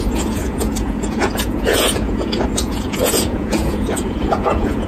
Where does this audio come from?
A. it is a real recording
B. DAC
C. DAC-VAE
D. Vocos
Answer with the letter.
D